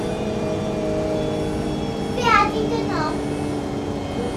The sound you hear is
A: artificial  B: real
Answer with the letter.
B